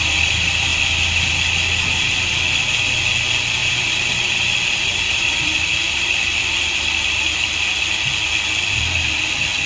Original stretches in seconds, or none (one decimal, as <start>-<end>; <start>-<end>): 0.0-3.6; 7.8-9.7